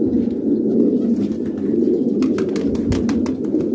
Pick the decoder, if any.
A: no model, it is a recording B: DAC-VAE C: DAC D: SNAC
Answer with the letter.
A